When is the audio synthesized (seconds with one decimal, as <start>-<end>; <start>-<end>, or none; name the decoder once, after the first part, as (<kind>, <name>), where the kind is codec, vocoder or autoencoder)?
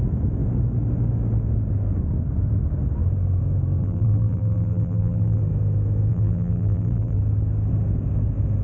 3.8-5.4 (vocoder, BigVGAN v2); 6.1-7.2